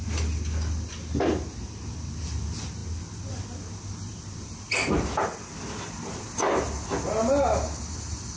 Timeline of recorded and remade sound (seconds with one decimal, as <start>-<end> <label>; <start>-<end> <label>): 0.0-8.4 recorded